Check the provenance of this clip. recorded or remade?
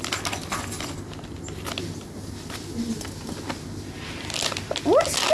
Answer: recorded